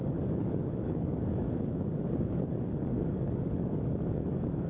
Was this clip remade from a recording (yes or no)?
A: yes